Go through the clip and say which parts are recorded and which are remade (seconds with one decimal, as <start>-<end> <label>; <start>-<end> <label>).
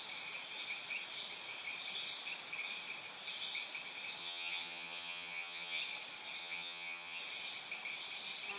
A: 0.0-4.2 recorded; 4.2-5.8 remade; 5.8-6.4 recorded; 6.4-7.2 remade; 7.2-8.6 recorded